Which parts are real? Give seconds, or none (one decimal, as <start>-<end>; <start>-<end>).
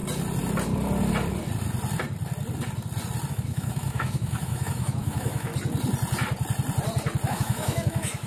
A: 0.0-3.3; 5.5-7.3